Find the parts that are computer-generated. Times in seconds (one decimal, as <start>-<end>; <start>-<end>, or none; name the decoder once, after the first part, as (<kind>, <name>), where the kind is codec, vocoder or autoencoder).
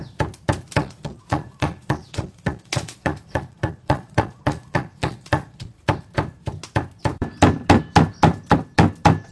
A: 0.8-5.8 (vocoder, Vocos)